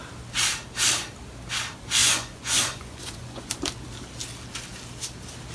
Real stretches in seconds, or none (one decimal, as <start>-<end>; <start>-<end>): 0.0-2.0; 3.5-5.5